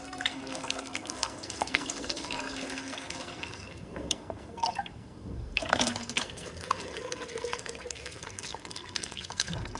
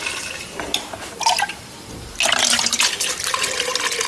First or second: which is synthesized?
first